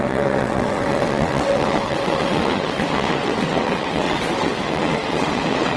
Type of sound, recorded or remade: remade